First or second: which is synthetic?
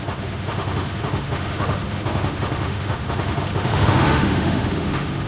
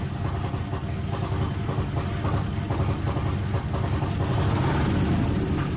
first